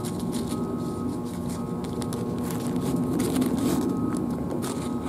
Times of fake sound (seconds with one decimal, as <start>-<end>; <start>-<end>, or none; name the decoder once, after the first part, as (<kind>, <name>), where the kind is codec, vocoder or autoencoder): 1.1-1.6 (codec, DAC)

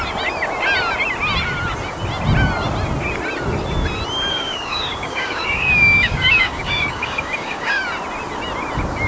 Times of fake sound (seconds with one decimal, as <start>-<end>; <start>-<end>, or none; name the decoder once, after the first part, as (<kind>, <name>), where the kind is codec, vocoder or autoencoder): 4.3-7.8 (codec, DAC)

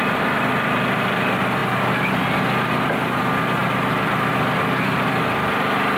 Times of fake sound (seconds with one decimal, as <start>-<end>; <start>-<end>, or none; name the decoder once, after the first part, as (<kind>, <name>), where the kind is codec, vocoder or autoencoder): none

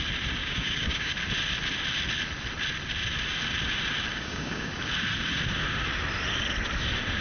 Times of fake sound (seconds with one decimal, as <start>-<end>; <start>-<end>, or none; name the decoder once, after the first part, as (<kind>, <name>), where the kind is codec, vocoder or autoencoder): 0.4-1.1 (codec, DAC); 4.1-4.8

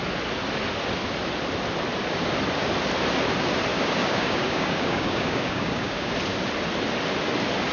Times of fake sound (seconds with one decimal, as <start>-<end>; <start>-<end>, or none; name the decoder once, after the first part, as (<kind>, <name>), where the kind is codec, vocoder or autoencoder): 3.7-6.1 (codec, DAC)

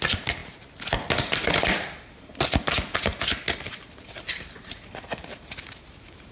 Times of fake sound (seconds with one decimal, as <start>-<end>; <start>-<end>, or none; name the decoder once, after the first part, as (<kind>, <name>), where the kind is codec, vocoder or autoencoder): none

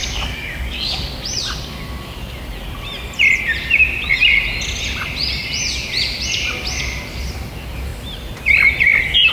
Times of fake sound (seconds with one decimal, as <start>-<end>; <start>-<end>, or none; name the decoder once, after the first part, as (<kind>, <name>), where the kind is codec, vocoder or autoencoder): 0.0-1.2 (codec, DAC)

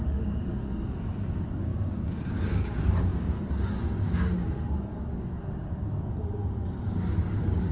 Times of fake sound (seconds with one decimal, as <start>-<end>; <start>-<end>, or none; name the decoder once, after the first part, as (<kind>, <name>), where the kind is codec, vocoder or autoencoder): 0.0-7.7 (codec, DAC)